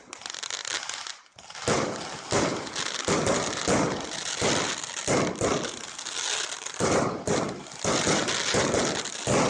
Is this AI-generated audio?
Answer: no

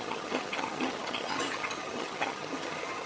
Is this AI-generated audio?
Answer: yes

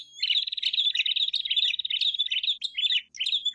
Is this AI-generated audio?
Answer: no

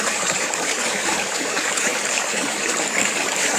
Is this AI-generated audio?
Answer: yes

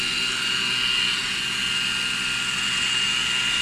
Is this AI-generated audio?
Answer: no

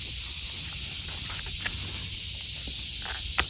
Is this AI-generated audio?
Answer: no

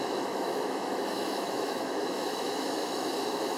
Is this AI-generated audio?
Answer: yes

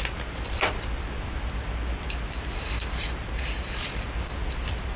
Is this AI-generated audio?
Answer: no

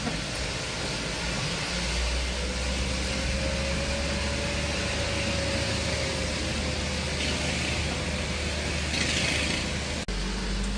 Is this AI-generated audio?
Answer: no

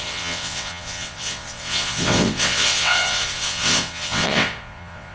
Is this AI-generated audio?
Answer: yes